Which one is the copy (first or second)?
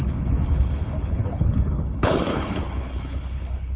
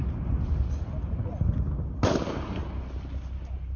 first